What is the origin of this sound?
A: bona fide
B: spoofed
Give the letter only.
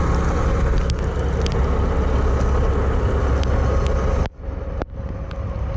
A